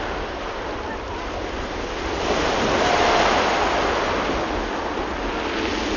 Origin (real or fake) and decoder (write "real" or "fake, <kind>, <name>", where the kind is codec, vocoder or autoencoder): real